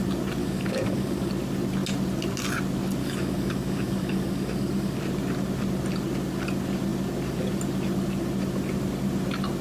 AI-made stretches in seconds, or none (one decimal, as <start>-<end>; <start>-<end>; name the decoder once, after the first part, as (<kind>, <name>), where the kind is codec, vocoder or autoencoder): 0.4-1.3 (codec, DAC); 3.0-5.0